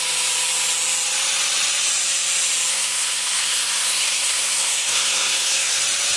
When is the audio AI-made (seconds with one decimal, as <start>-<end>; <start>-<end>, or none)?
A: 2.7-5.8